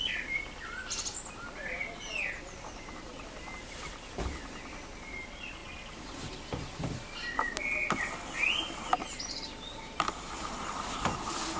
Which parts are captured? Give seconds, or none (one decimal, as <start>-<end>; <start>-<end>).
0.0-3.1; 3.9-11.6